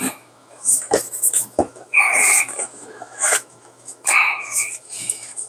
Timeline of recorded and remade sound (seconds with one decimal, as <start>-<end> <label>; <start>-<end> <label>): 0.0-5.5 remade